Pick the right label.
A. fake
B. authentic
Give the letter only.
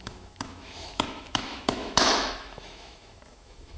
A